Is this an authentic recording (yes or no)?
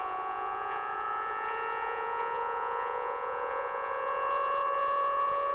no